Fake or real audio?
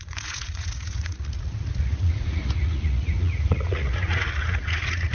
fake